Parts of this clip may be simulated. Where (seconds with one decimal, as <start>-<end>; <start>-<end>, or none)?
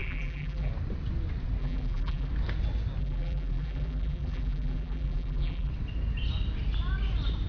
0.0-0.7; 1.6-2.3; 3.0-5.7